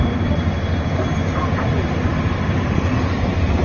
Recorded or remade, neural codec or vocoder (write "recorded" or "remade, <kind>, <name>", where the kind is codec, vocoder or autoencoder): recorded